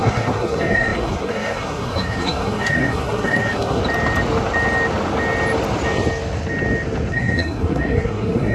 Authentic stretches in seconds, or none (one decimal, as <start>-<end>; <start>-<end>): 3.8-7.1